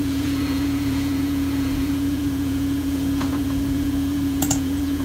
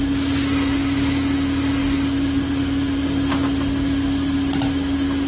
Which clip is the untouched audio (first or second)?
second